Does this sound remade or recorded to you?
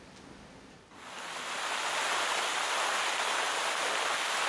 recorded